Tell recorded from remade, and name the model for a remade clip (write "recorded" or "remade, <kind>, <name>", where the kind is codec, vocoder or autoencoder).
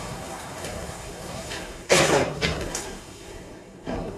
remade, codec, SNAC